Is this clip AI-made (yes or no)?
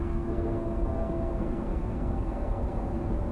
yes